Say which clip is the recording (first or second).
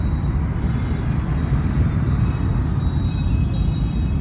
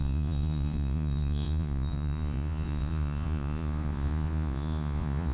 first